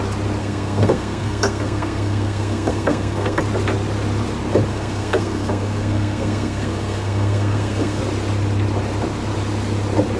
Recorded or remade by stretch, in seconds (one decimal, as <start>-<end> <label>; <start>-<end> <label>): 0.0-0.4 recorded; 0.4-3.4 remade; 3.4-4.7 recorded; 4.7-8.0 remade; 8.0-10.2 recorded